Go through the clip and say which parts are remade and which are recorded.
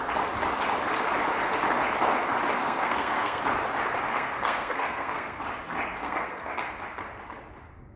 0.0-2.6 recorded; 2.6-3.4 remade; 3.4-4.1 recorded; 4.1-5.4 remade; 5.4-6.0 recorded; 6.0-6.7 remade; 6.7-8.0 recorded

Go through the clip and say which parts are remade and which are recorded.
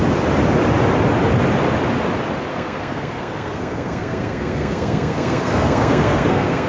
0.0-2.5 recorded; 2.5-6.7 remade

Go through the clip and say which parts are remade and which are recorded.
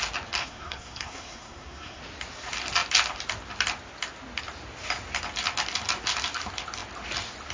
0.0-0.4 recorded; 0.4-2.0 remade; 2.0-7.5 recorded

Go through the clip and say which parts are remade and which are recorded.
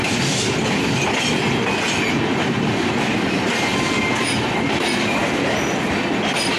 0.0-6.6 recorded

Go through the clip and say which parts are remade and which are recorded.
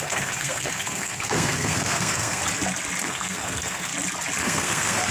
0.0-2.4 remade; 2.4-3.0 recorded; 3.0-3.9 remade; 3.9-4.4 recorded; 4.4-5.1 remade